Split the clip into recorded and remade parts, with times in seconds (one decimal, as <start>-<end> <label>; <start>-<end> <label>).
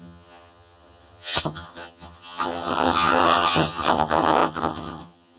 0.0-5.4 remade